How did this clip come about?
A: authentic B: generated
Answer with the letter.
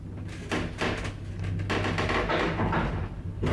A